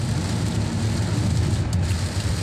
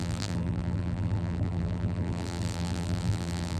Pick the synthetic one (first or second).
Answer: second